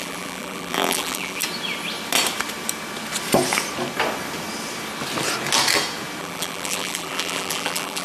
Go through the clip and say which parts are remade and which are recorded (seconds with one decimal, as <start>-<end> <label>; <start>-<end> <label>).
0.0-1.4 remade; 1.4-6.2 recorded; 6.2-8.0 remade